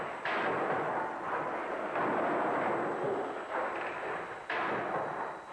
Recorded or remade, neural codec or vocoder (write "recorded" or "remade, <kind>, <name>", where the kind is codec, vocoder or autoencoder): recorded